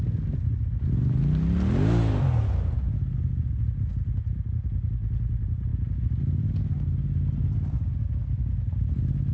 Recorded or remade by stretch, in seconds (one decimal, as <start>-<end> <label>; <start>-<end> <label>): 0.0-9.3 recorded